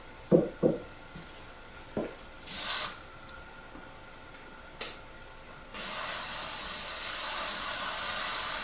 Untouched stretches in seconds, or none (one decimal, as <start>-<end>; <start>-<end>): 0.0-8.6